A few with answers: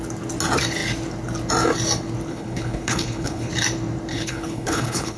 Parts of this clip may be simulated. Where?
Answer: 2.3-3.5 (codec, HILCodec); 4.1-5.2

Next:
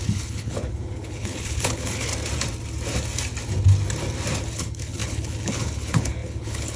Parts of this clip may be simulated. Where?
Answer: 0.0-2.1 (codec, HILCodec); 4.5-6.8

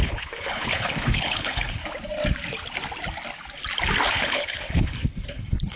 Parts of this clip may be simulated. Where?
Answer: 0.0-1.8 (codec, HILCodec); 4.1-5.8